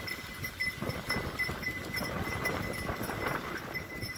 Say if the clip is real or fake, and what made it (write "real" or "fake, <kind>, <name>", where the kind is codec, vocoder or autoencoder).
real